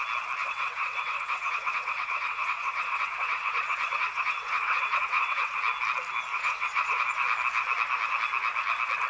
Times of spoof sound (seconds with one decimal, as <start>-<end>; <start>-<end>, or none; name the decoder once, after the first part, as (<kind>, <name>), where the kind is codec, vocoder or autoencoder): 0.4-5.6 (vocoder, WaveNeXt); 6.3-7.0